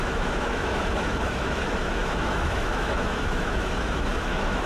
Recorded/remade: remade